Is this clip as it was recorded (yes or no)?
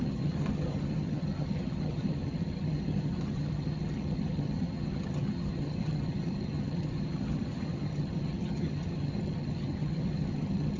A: no